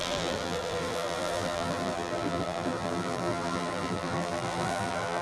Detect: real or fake fake